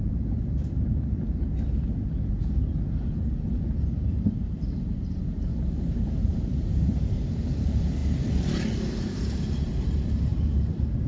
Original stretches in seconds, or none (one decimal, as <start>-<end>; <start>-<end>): 2.4-3.1